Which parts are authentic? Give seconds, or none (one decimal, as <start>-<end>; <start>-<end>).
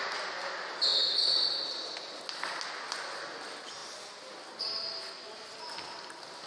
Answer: 0.0-6.5